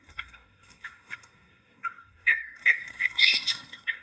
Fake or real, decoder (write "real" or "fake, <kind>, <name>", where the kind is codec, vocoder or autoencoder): fake, codec, SNAC